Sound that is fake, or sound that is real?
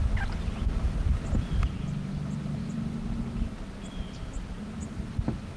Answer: real